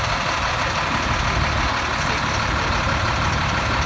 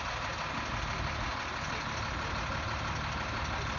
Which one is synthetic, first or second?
first